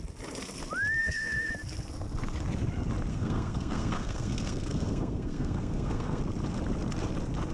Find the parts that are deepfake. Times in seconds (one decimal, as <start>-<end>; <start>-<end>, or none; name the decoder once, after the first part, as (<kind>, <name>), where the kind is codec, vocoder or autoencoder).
1.0-1.5 (codec, SNAC); 3.1-6.2